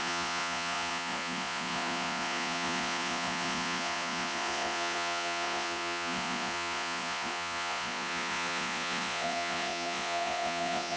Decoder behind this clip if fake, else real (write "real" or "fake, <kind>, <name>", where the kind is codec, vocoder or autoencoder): fake, vocoder, Vocos